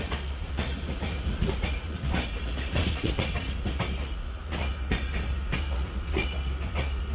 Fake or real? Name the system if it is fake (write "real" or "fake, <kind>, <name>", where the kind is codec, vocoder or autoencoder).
fake, vocoder, Vocos